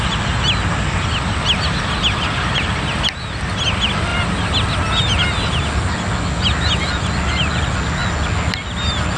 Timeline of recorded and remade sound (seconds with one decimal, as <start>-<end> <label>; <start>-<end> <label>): 0.0-9.2 recorded